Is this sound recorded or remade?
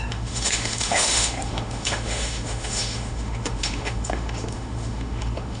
remade